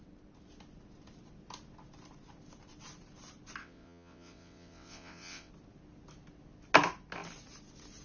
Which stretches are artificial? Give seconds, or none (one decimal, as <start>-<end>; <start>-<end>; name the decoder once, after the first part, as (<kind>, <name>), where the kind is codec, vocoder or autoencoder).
3.6-5.5 (vocoder, WaveNeXt)